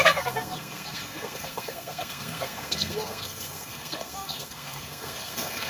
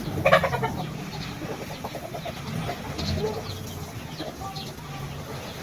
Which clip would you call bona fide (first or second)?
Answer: second